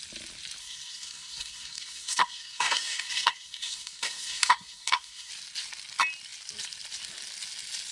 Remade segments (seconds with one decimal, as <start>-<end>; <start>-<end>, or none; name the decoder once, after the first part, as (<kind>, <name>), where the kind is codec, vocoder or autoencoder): 0.6-5.3 (codec, SNAC)